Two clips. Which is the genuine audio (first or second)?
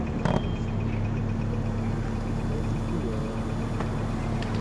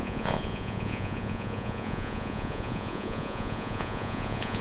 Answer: first